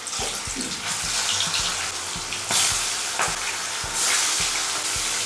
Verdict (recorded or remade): recorded